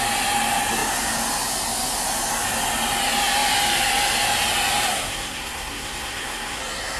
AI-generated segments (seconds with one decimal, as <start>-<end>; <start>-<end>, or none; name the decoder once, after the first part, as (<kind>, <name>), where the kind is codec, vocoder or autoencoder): 4.9-6.6 (codec, SNAC)